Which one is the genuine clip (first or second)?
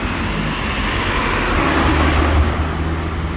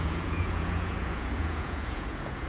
first